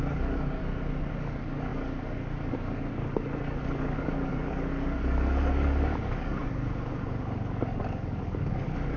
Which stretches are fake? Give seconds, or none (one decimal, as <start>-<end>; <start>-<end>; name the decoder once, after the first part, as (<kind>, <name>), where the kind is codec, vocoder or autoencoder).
0.0-0.6 (codec, DAC); 1.1-9.0